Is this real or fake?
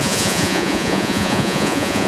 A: fake